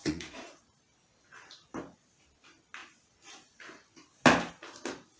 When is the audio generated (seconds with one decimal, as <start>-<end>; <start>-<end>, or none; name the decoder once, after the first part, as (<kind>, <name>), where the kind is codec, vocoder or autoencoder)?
0.0-0.6 (vocoder, Vocos)